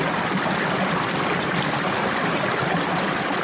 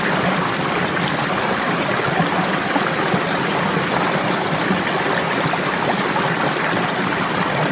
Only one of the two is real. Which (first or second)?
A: second